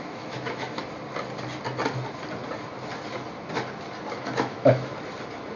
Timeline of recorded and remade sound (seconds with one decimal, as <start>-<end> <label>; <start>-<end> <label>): 0.0-0.8 remade; 0.8-4.2 recorded; 4.2-4.9 remade; 4.9-5.6 recorded